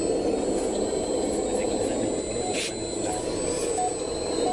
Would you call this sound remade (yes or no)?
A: no